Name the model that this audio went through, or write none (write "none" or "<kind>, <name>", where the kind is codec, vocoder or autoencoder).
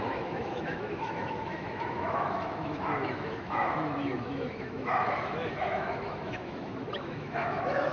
autoencoder, DAC-VAE